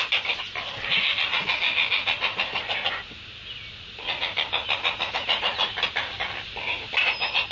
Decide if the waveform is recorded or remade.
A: recorded